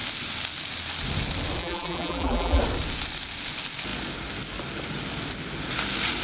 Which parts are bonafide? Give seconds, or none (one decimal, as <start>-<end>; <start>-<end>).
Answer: 0.0-1.6; 2.6-6.2